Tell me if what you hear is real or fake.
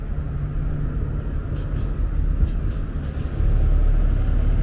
real